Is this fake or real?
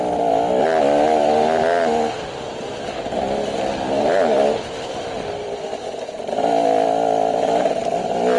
real